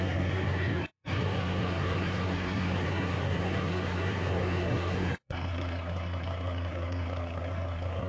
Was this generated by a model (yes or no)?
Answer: yes